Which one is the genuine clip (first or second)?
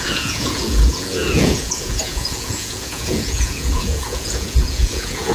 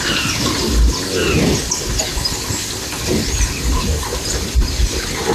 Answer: second